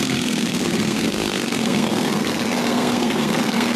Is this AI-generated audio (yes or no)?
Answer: yes